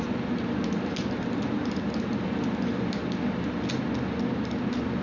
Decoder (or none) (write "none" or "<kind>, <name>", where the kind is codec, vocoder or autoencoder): none